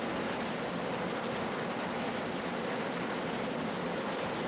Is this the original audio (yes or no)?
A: yes